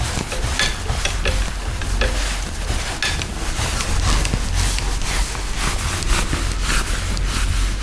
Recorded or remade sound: recorded